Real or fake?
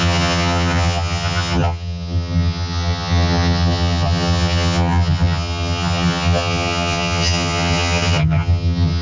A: fake